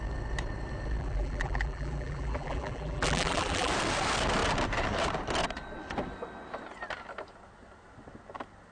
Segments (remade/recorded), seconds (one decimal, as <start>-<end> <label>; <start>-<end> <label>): 0.0-1.0 recorded; 1.0-3.7 remade; 3.7-8.7 recorded